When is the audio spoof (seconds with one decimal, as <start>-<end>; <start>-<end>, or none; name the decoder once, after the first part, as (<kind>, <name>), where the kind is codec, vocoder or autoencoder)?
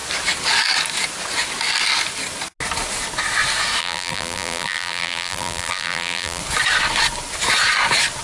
3.8-6.4 (vocoder, BigVGAN v2)